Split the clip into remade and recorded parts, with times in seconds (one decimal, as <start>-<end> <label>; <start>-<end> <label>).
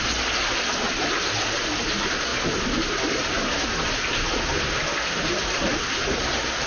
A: 0.0-6.7 recorded